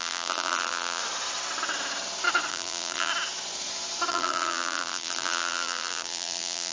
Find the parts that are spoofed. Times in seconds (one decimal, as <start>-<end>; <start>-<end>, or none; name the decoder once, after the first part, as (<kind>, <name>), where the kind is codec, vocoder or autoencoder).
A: 0.0-1.0 (vocoder, BigVGAN v2); 2.5-3.1; 4.1-6.7